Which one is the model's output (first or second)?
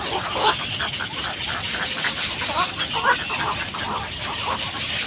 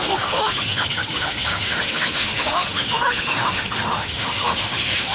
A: second